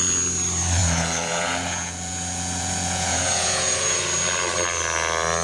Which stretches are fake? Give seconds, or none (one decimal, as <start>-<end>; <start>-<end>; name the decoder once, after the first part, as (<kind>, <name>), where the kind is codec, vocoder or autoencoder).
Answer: 0.8-4.0 (vocoder, Vocos)